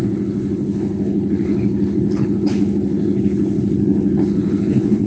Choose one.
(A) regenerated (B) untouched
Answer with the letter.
A